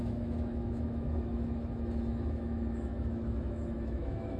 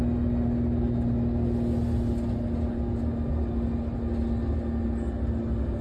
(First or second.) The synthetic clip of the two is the first